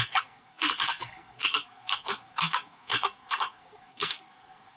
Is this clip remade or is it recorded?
remade